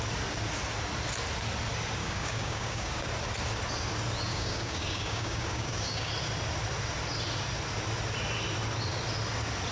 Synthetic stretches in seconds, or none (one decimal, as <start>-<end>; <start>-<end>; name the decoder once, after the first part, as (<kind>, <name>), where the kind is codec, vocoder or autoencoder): 2.0-3.1 (codec, DAC); 4.3-6.1